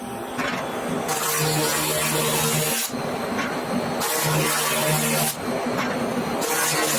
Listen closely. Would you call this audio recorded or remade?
recorded